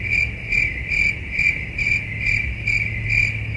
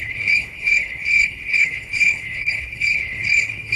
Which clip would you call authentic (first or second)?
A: first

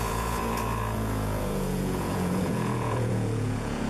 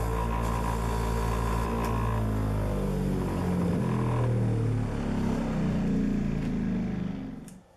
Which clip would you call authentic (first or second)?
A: second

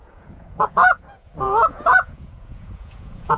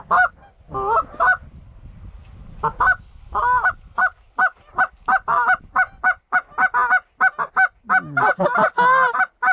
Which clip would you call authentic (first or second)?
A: second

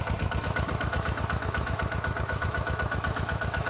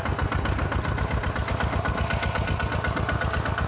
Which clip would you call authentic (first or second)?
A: second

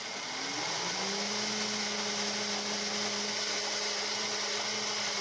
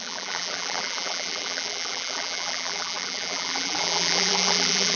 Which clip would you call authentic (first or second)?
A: first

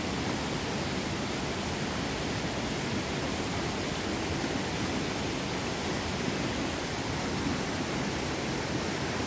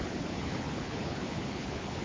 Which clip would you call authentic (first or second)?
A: first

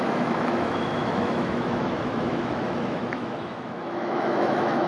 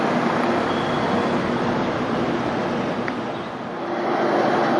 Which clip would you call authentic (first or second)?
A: second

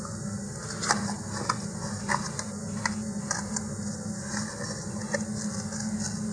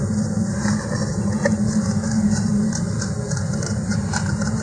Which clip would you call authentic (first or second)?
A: first